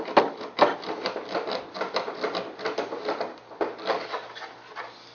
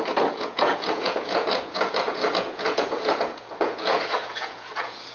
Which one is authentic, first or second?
first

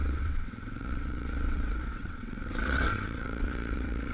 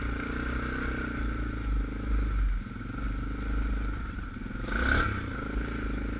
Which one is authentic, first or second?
second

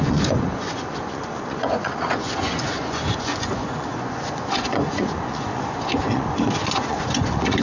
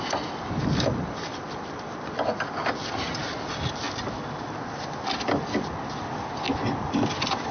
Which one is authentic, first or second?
second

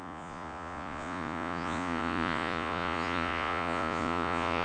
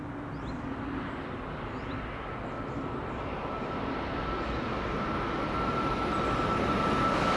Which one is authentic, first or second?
second